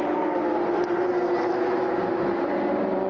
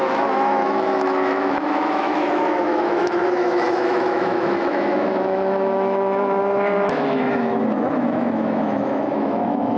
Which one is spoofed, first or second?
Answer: second